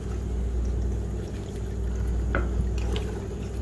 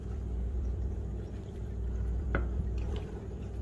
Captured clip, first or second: first